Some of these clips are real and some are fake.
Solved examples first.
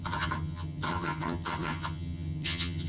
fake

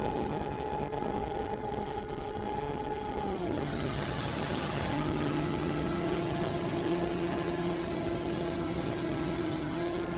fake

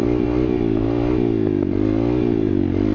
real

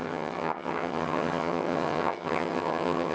fake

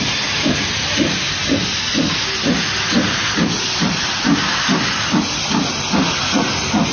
real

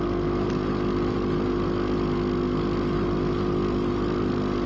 real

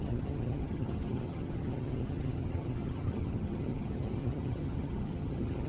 fake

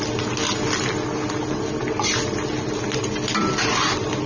real